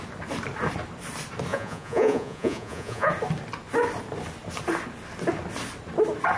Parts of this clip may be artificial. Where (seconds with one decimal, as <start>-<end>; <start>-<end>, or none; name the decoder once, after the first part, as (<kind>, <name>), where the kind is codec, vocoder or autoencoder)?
1.5-3.1 (vocoder, Vocos)